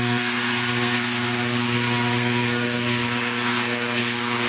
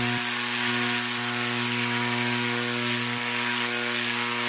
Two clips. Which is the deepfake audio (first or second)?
first